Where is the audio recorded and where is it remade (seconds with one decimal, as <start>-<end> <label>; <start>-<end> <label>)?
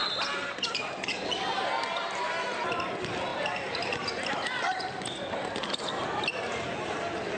0.0-3.3 recorded; 3.3-4.1 remade; 4.1-7.4 recorded